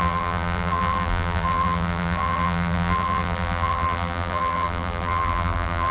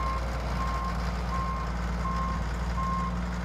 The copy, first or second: first